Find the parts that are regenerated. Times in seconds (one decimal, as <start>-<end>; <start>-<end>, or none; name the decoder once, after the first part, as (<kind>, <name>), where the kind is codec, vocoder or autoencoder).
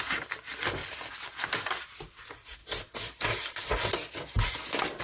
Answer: 0.0-0.8 (vocoder, BigVGAN v2); 1.8-2.6